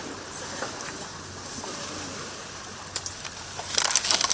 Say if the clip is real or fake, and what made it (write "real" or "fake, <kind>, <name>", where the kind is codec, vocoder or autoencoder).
real